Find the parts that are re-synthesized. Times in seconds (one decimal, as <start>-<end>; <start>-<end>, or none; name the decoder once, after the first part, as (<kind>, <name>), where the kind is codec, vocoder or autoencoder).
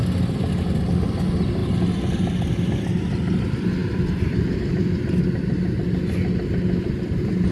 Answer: 3.8-5.2 (vocoder, BigVGAN v2)